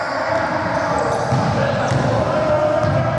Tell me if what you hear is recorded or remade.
recorded